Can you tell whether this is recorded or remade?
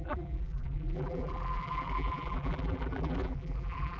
remade